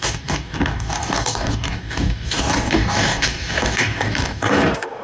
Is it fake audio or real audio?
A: fake